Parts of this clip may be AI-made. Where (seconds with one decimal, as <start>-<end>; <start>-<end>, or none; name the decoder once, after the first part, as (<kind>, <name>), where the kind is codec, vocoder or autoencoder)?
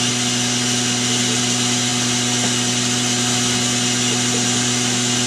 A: none